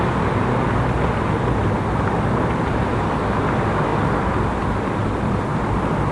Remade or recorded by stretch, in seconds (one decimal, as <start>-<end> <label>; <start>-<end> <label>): 0.0-1.6 recorded; 1.6-2.8 remade; 2.8-6.1 recorded